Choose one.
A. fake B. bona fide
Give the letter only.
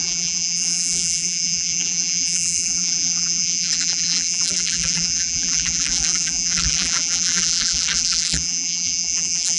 A